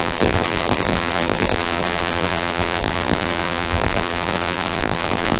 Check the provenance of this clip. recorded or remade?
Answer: remade